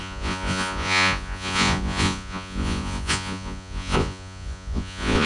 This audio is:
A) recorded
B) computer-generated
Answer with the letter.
B